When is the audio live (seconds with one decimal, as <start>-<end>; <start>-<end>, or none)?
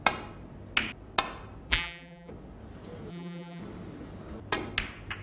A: 0.0-1.7; 2.3-3.1; 3.6-5.2